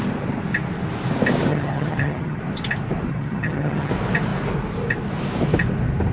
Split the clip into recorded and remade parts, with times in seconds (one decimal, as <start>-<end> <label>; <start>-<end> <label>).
0.0-1.5 recorded; 1.5-2.4 remade; 2.4-3.1 recorded; 3.1-3.9 remade; 3.9-6.1 recorded